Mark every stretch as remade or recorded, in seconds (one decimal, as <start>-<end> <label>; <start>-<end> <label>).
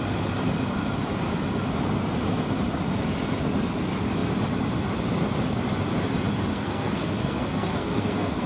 0.0-6.5 recorded; 6.5-8.5 remade